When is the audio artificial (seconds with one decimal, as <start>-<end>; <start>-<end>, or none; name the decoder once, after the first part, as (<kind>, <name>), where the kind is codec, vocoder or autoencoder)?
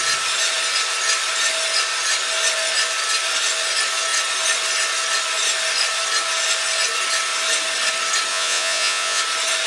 8.3-9.2 (vocoder, Vocos)